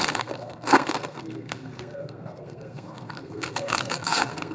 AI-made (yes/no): yes